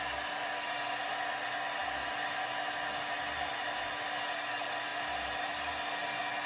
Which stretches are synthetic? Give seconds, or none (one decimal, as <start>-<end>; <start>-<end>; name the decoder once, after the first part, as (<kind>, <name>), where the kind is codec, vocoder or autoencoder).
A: 4.9-5.7 (vocoder, BigVGAN v2)